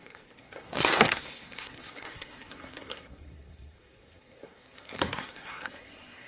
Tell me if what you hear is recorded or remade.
remade